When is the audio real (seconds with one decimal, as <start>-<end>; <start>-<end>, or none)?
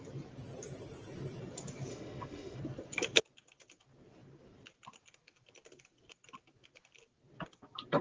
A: 0.0-1.9; 2.6-8.0